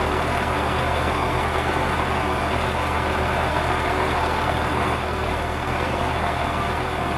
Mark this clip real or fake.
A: fake